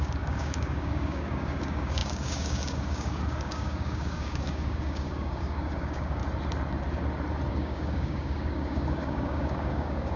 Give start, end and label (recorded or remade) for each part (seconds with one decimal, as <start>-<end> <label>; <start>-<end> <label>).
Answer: 0.0-6.2 remade; 6.2-7.5 recorded; 7.5-10.2 remade